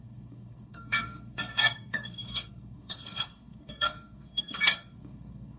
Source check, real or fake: fake